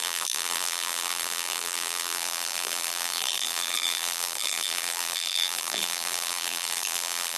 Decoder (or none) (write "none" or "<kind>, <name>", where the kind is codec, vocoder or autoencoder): vocoder, BigVGAN v2